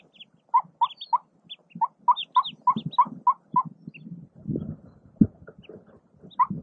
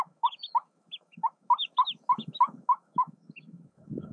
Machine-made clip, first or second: second